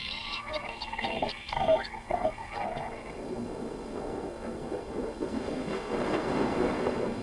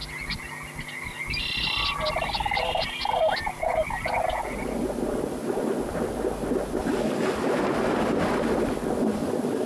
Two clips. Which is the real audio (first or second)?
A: second